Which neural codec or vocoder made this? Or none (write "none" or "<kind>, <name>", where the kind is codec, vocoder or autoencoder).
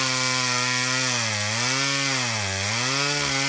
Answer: none